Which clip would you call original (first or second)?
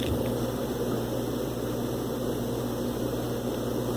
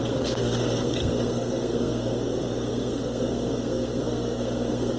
first